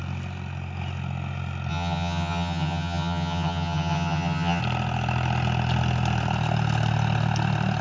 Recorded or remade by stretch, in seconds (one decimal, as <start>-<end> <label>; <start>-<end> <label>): 0.0-1.7 recorded; 1.7-4.6 remade; 4.6-7.8 recorded